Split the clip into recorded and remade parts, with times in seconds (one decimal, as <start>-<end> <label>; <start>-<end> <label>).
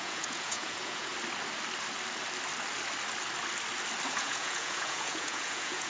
0.0-1.1 remade; 1.1-4.1 recorded; 4.1-5.9 remade